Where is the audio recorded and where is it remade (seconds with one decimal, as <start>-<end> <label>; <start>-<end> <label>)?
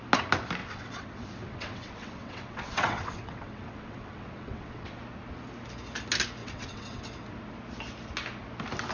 0.0-0.6 recorded; 0.6-5.0 remade; 5.0-6.4 recorded; 6.4-7.0 remade; 7.0-8.9 recorded